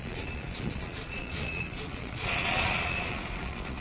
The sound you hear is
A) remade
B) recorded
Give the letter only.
A